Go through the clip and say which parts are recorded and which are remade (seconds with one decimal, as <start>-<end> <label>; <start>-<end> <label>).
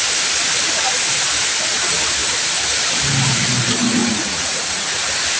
0.0-4.0 recorded; 4.0-5.0 remade; 5.0-5.4 recorded